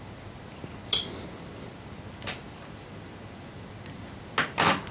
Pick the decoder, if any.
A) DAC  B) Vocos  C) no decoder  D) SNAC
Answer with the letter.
C